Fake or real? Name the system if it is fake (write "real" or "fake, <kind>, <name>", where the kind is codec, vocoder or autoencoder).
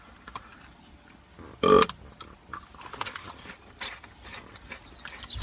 real